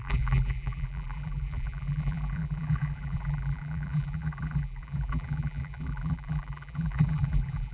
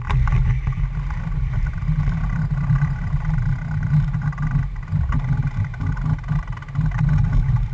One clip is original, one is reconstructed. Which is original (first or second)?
second